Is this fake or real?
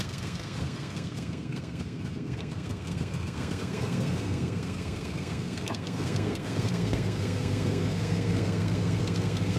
fake